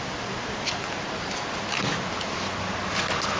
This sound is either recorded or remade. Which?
recorded